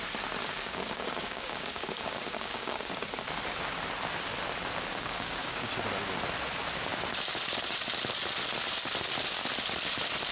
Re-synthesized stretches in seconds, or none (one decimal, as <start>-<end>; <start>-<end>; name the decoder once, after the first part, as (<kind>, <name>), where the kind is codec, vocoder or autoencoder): 0.4-2.9 (codec, DAC); 4.9-5.7